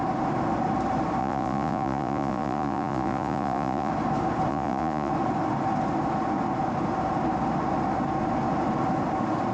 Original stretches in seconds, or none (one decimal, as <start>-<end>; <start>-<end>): 0.0-1.2; 3.9-4.5; 5.1-9.5